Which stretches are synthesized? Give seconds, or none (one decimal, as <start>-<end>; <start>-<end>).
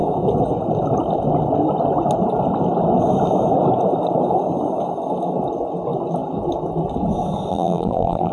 7.5-8.3